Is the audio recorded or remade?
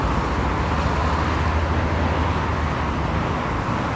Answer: recorded